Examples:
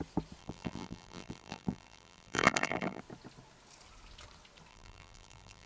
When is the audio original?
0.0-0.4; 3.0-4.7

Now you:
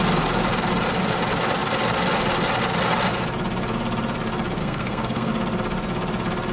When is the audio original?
0.0-4.6; 5.3-6.5

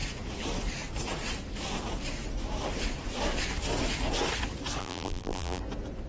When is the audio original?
0.0-4.8; 5.6-6.1

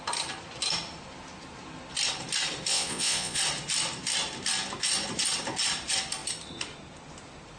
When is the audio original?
0.0-2.7; 3.4-7.6

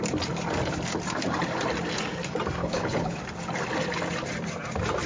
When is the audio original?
0.0-2.6; 3.2-5.1